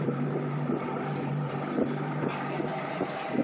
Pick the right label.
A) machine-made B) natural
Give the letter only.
A